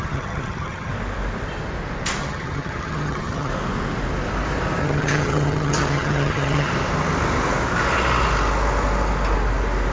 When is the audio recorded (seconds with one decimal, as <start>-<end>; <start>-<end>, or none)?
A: 0.9-2.2; 3.5-4.8; 6.7-9.9